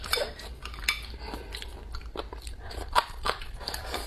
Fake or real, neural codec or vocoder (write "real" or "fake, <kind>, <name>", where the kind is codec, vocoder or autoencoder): real